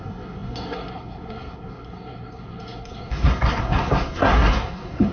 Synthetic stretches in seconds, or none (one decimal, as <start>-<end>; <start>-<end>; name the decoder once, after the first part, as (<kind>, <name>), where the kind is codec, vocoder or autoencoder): 0.0-5.1 (codec, SNAC)